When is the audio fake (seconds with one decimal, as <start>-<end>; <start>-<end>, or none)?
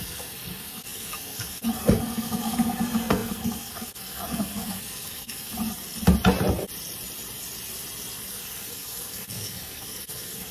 0.0-5.5; 8.3-10.5